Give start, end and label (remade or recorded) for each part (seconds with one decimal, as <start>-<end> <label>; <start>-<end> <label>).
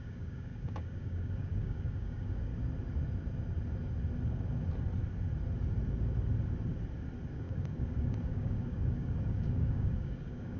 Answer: 0.0-2.5 remade; 2.5-7.3 recorded; 7.3-10.6 remade